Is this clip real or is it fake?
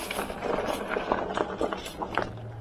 real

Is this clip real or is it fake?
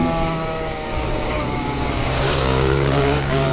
fake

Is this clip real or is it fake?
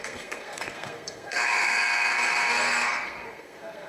fake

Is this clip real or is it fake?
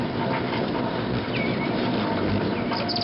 fake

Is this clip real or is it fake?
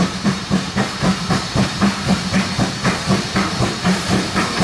fake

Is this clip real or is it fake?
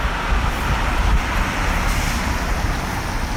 real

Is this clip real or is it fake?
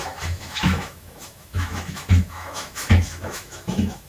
fake